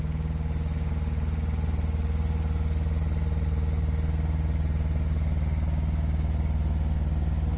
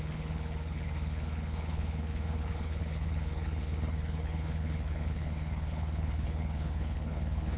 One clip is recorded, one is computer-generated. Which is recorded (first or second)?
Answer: first